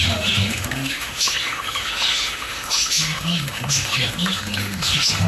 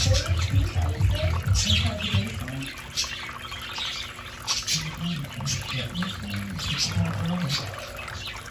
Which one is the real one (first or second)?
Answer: second